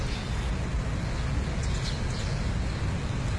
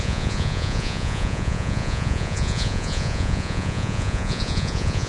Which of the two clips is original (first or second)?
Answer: first